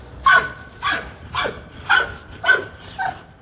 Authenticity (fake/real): real